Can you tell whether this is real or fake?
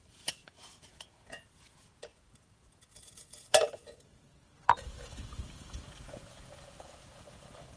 fake